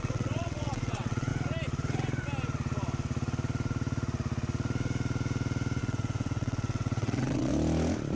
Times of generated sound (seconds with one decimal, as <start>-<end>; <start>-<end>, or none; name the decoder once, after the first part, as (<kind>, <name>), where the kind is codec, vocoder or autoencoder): 0.0-1.3 (vocoder, WaveNeXt); 5.8-7.5